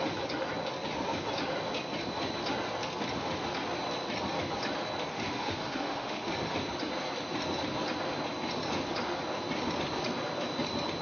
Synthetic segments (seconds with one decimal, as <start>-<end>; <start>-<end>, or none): 5.1-6.3